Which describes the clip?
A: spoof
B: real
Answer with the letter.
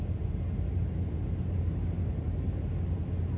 B